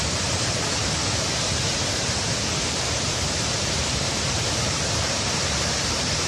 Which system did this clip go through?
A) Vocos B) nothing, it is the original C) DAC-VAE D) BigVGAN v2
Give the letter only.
D